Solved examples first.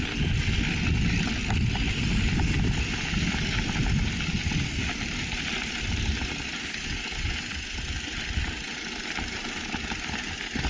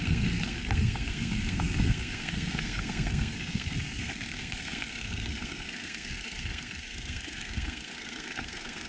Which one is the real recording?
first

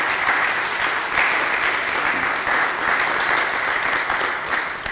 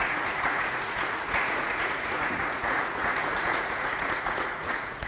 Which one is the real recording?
first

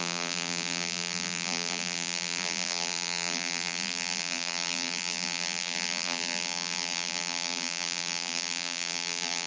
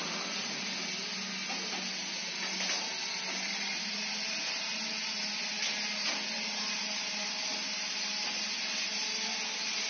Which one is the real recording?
second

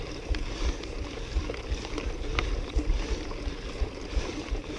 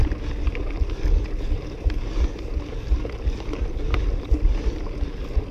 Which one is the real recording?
second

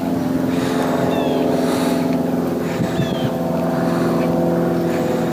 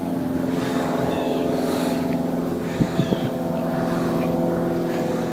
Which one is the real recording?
first